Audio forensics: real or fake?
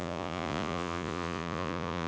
fake